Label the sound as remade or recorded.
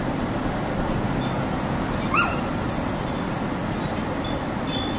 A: recorded